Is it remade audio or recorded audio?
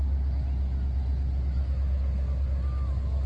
recorded